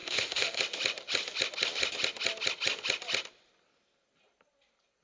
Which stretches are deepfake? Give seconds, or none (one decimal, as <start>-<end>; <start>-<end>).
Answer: 0.0-0.6